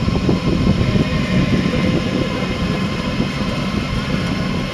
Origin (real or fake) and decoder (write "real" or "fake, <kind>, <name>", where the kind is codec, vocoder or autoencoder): real